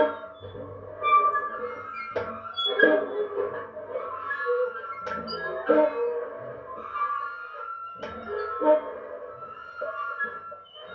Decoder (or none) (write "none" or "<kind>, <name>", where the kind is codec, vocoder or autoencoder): none